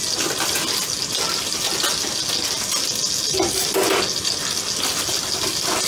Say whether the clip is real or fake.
real